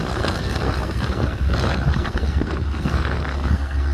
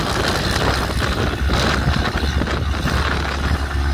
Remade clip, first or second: first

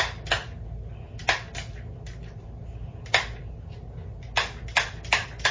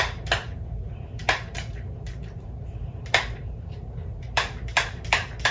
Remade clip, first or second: second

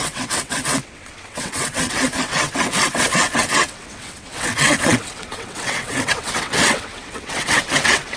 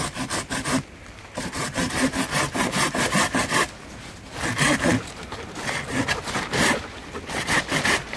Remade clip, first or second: first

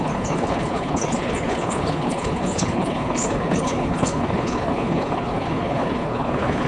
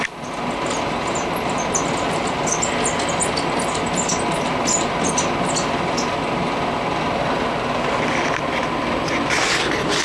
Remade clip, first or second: first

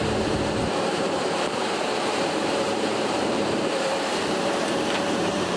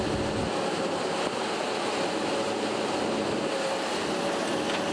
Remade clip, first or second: first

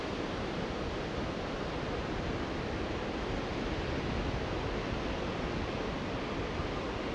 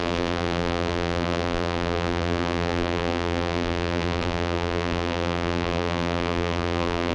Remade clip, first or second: second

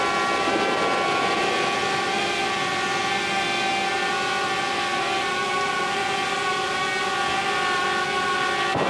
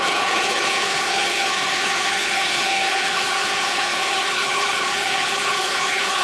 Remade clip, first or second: second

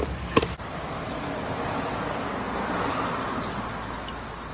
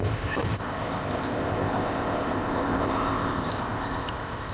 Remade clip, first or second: second